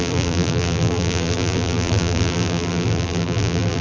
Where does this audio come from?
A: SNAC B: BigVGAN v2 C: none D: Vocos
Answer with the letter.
B